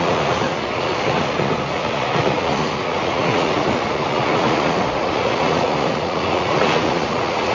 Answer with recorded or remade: remade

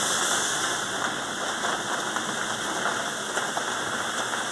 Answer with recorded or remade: recorded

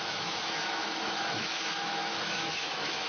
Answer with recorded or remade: remade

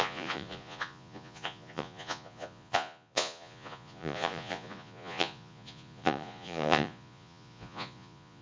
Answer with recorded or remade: remade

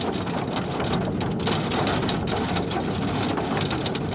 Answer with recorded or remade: recorded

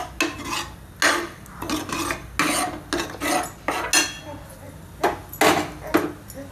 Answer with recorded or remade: recorded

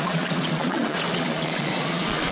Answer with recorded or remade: remade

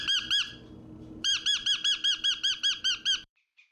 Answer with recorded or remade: remade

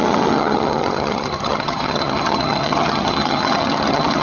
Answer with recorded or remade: remade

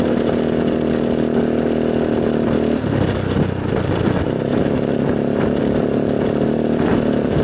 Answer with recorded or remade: recorded